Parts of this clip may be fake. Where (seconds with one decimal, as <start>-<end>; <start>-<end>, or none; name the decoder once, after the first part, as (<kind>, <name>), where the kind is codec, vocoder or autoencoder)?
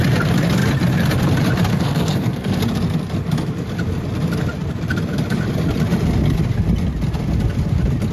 1.7-2.6 (codec, SNAC)